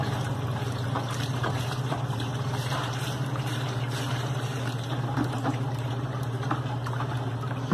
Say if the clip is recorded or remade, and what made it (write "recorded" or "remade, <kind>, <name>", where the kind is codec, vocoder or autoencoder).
remade, vocoder, BigVGAN v2